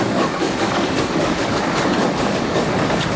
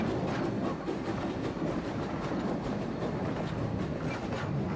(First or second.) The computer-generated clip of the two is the first